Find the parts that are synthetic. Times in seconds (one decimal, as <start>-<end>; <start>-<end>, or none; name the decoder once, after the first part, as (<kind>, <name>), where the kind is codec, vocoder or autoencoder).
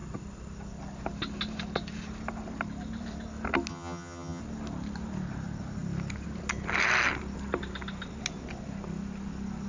3.7-4.4 (vocoder, HiFi-GAN)